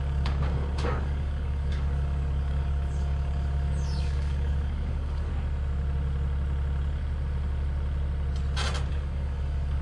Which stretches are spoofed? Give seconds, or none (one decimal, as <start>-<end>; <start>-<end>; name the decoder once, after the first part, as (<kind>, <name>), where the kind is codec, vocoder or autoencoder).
0.0-5.3 (codec, DAC); 8.9-9.8

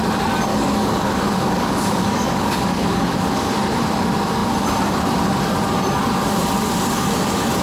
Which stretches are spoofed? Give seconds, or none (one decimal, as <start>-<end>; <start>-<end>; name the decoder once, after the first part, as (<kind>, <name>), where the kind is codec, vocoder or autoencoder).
0.5-3.5 (codec, DAC)

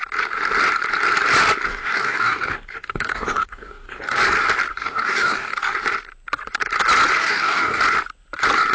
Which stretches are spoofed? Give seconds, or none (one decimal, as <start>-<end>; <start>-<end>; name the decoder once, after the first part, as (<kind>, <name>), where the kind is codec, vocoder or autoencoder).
1.7-4.2 (codec, DAC); 4.7-5.6; 7.2-7.8

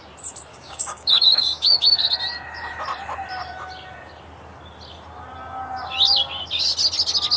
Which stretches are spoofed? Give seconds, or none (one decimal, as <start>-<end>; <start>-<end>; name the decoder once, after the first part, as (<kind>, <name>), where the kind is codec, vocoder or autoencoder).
0.5-2.0 (codec, DAC)

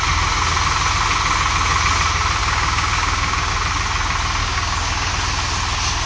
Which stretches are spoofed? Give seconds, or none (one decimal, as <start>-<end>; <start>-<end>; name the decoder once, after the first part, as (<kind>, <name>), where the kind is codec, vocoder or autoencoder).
2.4-3.5 (codec, DAC); 4.4-5.1

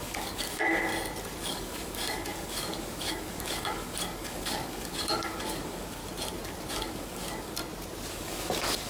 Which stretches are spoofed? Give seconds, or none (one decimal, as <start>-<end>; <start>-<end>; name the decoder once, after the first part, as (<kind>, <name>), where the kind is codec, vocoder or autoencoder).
0.0-0.9 (codec, DAC); 1.4-6.0; 6.7-7.6; 8.1-8.9